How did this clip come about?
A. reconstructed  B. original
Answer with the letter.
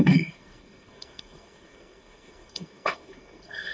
A